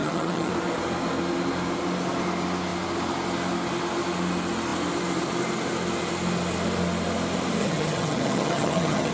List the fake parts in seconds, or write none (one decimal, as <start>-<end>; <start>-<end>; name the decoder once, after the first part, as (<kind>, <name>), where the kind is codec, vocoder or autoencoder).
0.0-0.5 (vocoder, HiFi-GAN); 7.6-9.1